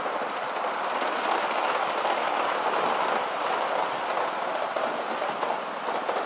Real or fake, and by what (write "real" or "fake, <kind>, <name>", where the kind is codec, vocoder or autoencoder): real